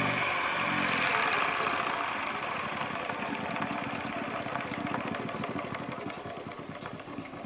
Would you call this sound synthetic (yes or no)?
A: no